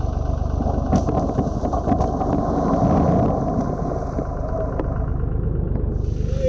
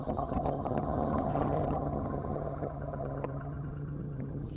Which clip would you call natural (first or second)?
first